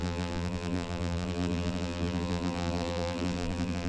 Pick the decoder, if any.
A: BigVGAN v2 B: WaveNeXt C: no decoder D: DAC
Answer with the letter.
A